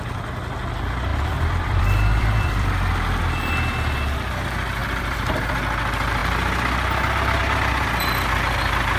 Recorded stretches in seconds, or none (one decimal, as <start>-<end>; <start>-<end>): 0.0-1.1; 2.9-4.8; 5.5-9.0